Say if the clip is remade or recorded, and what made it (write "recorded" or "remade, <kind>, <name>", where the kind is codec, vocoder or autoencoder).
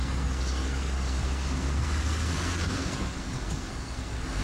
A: remade, codec, SNAC